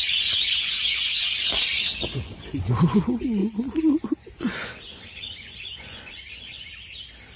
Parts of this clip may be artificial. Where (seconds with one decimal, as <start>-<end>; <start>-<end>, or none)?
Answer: 0.0-3.4; 4.0-6.7